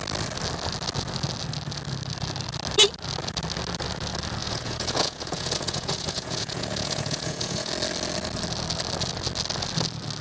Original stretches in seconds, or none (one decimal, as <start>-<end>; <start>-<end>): 0.0-4.4; 7.7-10.2